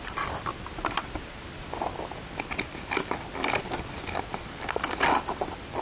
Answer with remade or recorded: recorded